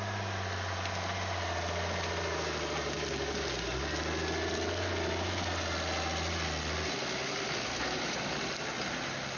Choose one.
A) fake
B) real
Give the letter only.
B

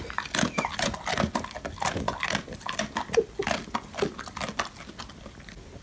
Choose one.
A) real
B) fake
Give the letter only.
A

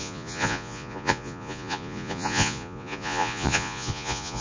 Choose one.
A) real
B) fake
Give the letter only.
B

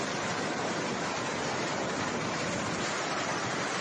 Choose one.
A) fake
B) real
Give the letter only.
B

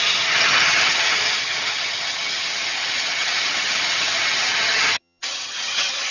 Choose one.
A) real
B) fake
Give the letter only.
B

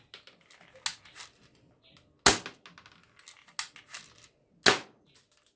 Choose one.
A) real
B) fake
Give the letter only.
A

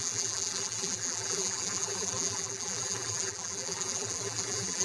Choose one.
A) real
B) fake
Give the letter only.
B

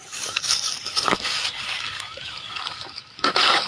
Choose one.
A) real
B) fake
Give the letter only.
B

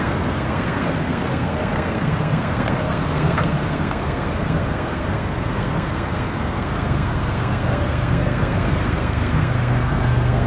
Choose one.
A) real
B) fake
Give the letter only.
B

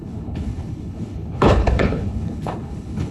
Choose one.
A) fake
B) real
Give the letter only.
A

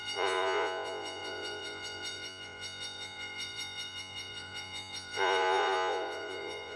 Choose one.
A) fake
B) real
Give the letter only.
A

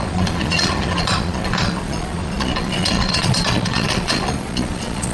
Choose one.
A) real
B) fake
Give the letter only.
B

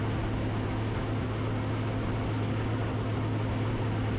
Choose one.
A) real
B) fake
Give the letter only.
A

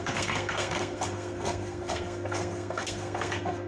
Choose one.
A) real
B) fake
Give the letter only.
B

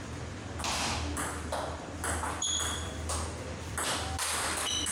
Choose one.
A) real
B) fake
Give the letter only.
B